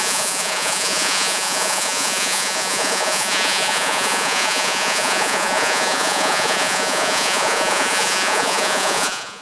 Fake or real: fake